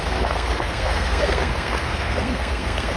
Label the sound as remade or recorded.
remade